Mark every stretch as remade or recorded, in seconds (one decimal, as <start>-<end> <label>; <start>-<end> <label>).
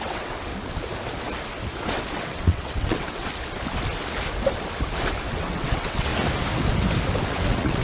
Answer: 0.0-0.5 remade; 0.5-2.1 recorded; 2.1-3.2 remade; 3.2-5.3 recorded; 5.3-6.1 remade; 6.1-7.3 recorded; 7.3-7.8 remade